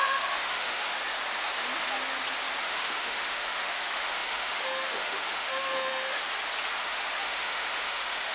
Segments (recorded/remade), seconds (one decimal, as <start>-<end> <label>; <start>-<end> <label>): 0.0-1.0 remade; 1.0-2.6 recorded; 2.6-6.2 remade; 6.2-6.8 recorded; 6.8-8.3 remade